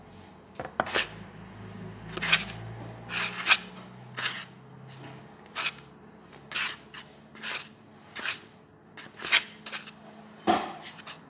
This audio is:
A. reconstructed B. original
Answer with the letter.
B